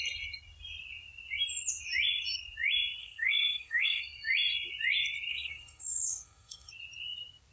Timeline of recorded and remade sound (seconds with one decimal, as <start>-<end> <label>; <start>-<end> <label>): 0.0-3.0 recorded; 3.0-4.0 remade; 4.0-5.3 recorded; 5.3-6.7 remade; 6.7-7.5 recorded